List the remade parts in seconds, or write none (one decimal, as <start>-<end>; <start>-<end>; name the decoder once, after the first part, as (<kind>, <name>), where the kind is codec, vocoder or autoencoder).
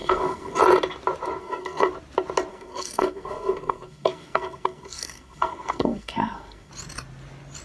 0.0-0.6 (codec, SNAC); 1.4-1.9; 2.5-6.7